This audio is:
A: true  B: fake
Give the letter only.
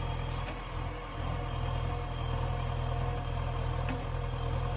A